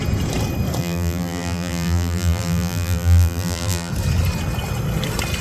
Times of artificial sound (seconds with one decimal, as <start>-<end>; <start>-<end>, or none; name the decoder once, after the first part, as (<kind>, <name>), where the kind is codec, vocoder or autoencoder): 0.8-3.9 (vocoder, BigVGAN v2)